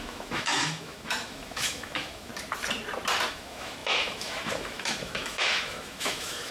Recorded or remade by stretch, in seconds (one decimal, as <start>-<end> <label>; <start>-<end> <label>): 0.0-2.3 remade; 2.3-3.3 recorded; 3.3-6.5 remade